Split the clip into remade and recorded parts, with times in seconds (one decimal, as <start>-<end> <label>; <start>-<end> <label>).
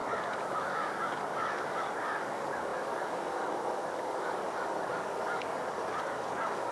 0.0-6.7 remade